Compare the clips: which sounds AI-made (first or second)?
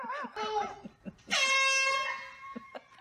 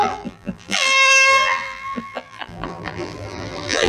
second